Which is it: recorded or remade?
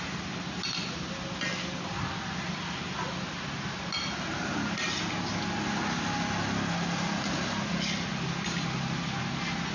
recorded